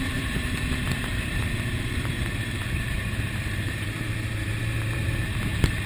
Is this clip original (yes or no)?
no